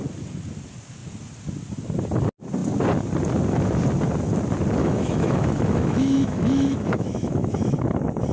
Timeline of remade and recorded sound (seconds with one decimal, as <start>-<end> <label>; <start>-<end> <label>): 0.0-4.8 recorded; 4.8-8.3 remade